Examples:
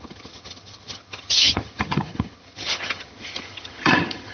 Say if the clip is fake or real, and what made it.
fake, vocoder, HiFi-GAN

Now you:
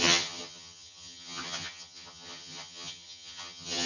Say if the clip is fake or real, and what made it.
fake, vocoder, HiFi-GAN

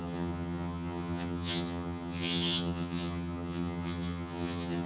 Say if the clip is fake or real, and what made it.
fake, vocoder, HiFi-GAN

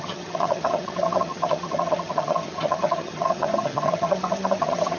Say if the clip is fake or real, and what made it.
fake, vocoder, HiFi-GAN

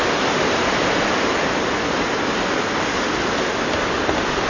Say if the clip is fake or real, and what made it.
real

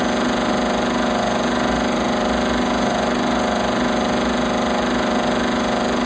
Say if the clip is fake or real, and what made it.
real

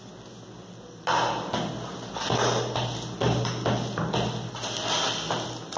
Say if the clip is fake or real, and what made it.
real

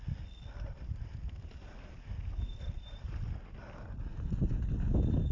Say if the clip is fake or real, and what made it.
real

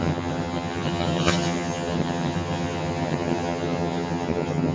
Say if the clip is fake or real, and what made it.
fake, vocoder, HiFi-GAN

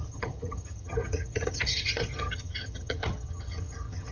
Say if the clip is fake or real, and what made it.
fake, vocoder, HiFi-GAN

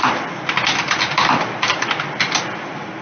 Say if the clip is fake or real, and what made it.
real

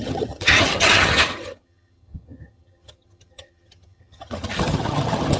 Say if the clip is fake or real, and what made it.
fake, vocoder, HiFi-GAN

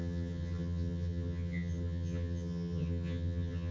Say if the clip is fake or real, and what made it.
fake, vocoder, HiFi-GAN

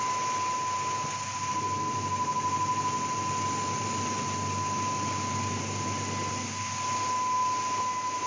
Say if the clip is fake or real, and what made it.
real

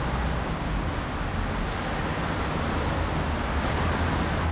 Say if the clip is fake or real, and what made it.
real